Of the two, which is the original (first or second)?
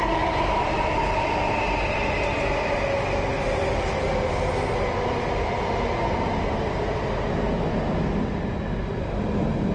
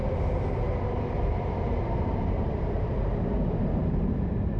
first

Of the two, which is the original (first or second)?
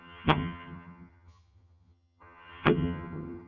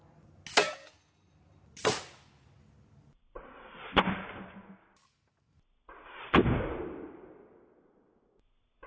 second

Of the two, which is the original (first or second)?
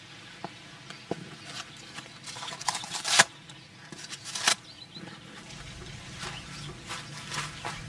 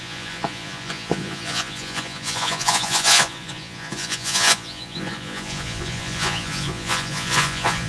first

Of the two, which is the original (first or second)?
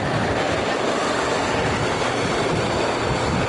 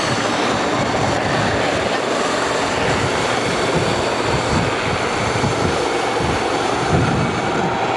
second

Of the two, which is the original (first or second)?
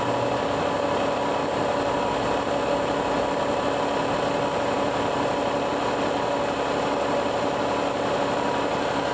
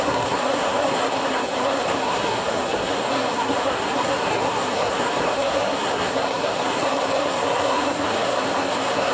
first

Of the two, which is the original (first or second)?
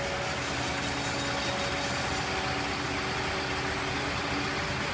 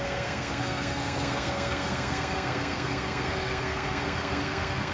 first